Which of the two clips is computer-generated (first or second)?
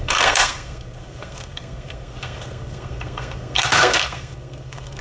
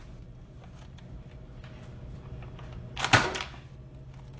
first